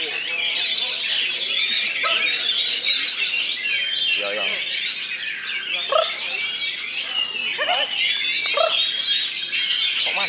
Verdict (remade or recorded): recorded